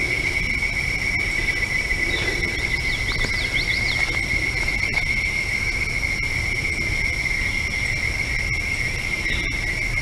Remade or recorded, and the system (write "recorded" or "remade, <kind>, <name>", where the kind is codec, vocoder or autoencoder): recorded